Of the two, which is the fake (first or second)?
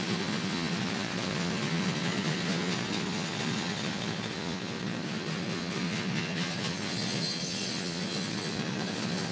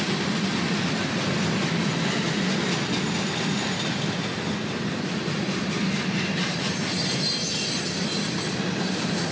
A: first